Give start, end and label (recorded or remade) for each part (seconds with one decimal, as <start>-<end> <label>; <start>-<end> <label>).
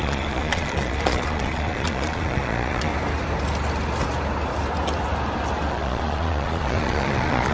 0.0-2.9 remade; 2.9-5.7 recorded; 5.7-7.5 remade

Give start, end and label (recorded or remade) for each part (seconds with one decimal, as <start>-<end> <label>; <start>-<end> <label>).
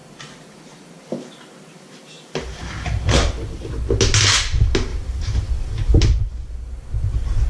0.0-3.7 remade; 3.7-4.9 recorded; 4.9-6.2 remade; 6.2-7.5 recorded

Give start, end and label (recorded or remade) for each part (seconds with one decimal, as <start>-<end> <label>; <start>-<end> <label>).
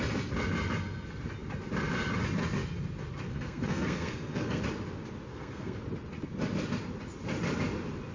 0.0-3.3 recorded; 3.3-4.6 remade; 4.6-5.3 recorded; 5.3-5.8 remade; 5.8-8.1 recorded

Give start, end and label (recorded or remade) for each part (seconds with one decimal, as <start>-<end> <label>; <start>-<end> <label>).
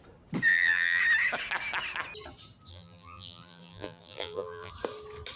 0.0-0.5 recorded; 0.5-1.0 remade; 1.0-2.7 recorded; 2.7-4.7 remade; 4.7-5.4 recorded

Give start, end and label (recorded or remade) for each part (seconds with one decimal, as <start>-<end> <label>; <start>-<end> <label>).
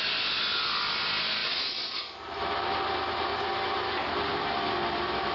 0.0-5.3 recorded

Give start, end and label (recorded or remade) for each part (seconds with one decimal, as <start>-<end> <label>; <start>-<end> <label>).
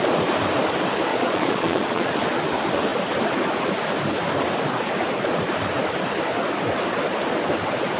0.0-1.1 recorded; 1.1-2.1 remade; 2.1-8.0 recorded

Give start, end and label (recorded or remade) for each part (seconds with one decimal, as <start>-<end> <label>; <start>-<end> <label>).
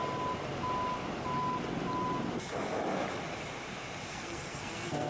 0.0-4.1 recorded; 4.1-5.1 remade